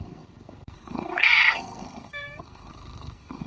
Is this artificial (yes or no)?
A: yes